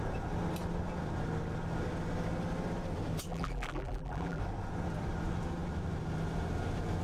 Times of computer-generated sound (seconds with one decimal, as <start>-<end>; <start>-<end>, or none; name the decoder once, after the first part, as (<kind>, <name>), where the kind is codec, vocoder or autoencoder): 3.3-4.4 (vocoder, BigVGAN v2)